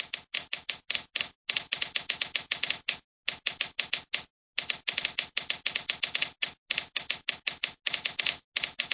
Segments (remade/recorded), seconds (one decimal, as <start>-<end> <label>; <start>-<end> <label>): 0.0-8.9 recorded